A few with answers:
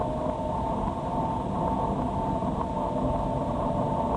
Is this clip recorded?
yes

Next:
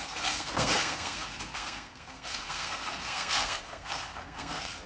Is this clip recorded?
no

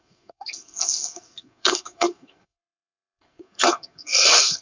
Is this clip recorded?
no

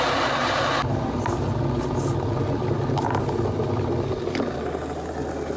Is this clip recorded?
yes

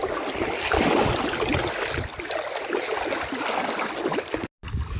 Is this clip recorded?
yes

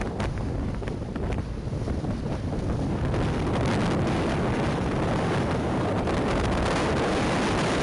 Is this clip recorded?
yes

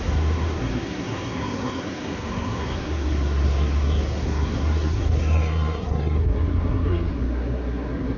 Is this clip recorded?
no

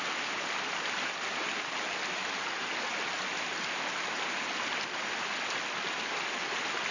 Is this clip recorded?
yes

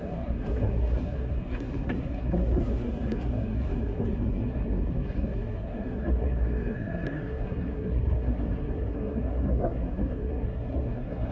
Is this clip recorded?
no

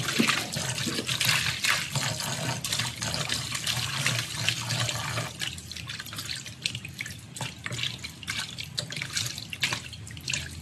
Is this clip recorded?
yes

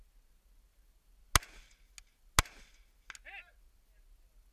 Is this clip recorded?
yes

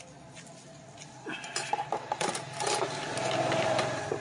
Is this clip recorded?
yes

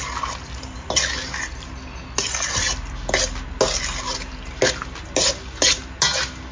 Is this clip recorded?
yes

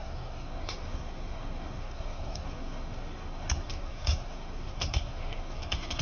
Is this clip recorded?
no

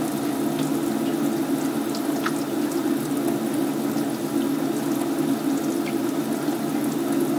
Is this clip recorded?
yes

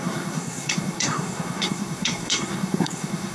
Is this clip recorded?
no